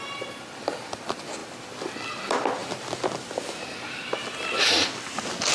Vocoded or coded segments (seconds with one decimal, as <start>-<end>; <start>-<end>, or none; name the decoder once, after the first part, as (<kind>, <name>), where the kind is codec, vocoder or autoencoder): none